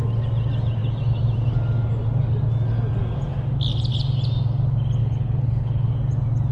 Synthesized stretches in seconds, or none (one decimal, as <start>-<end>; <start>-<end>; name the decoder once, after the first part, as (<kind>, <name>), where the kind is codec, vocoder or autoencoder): 5.0-5.9 (codec, HILCodec)